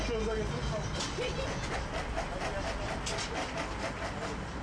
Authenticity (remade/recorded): recorded